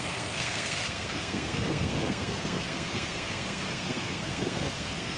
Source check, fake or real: fake